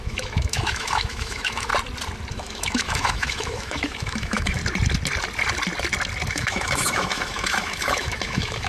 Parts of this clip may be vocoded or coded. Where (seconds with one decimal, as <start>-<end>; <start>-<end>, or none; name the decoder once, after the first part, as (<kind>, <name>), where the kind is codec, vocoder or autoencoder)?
0.0-1.7 (autoencoder, DAC-VAE); 2.3-4.6; 6.3-8.7